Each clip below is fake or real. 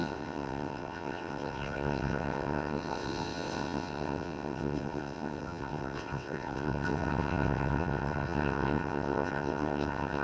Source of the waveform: fake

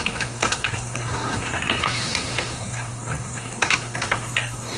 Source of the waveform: fake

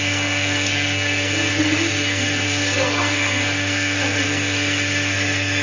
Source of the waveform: fake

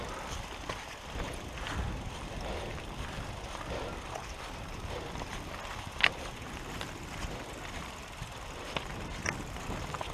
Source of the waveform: real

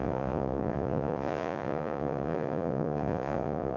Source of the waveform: fake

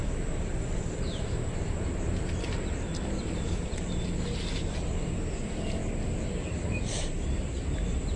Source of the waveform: fake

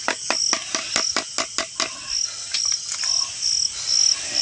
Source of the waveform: real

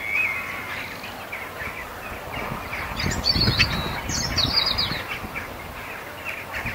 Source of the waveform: real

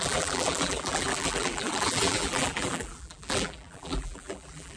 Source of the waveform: fake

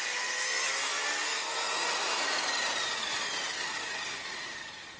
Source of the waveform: real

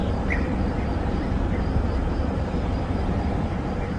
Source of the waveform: fake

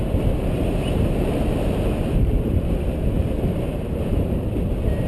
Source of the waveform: fake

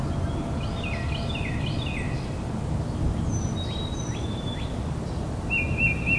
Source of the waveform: real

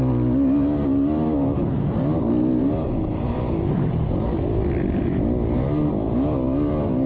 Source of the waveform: real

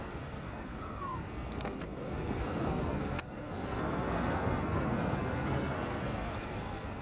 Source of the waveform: fake